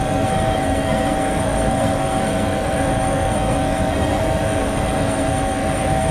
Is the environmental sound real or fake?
fake